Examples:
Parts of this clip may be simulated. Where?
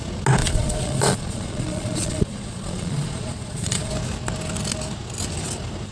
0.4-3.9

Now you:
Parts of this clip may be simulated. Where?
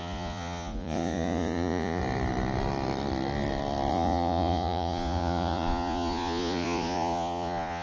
0.0-2.0; 3.9-7.8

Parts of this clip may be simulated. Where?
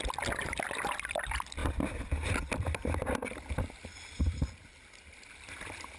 none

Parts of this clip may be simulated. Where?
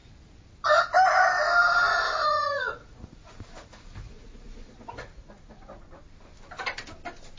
2.2-5.8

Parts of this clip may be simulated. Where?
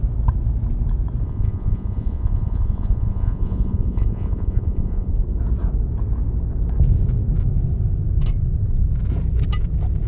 1.2-5.1